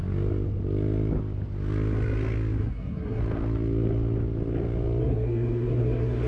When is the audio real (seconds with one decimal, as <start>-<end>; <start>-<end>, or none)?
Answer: 0.0-2.6; 3.2-5.0